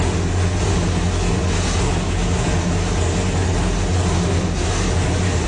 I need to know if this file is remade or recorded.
recorded